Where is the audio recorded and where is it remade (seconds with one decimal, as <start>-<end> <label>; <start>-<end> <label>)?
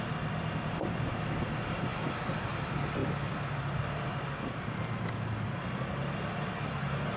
0.0-7.2 recorded